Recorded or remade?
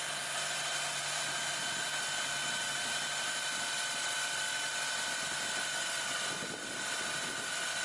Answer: recorded